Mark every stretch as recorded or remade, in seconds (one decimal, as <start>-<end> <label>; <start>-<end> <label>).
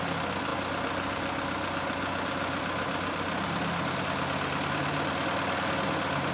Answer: 0.0-6.3 recorded